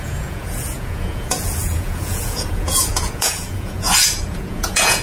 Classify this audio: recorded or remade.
remade